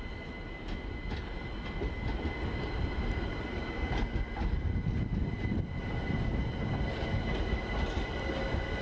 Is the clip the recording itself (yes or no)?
yes